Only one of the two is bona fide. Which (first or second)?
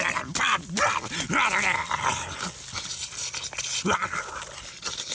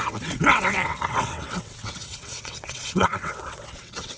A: first